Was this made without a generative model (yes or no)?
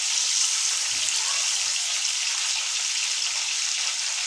yes